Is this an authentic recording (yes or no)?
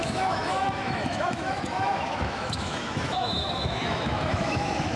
no